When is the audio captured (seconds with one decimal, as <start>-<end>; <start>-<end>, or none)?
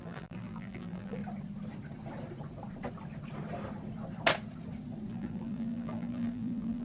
1.2-5.1